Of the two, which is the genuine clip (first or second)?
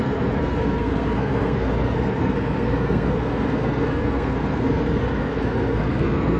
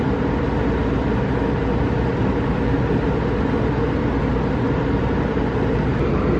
second